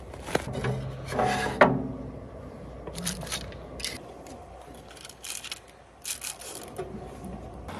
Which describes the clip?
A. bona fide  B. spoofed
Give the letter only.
A